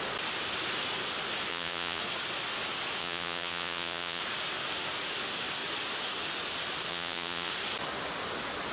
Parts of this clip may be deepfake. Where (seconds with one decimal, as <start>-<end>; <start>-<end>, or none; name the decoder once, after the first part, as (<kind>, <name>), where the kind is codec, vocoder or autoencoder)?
1.5-2.0 (vocoder, Vocos); 3.0-4.2; 6.9-7.5